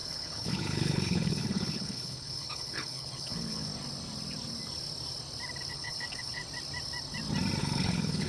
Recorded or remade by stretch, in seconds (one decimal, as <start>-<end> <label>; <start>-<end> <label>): 0.0-3.7 remade; 3.7-5.7 recorded; 5.7-6.4 remade; 6.4-7.6 recorded; 7.6-8.3 remade